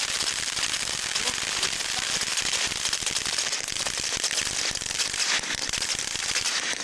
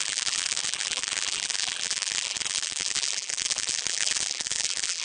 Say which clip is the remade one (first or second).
second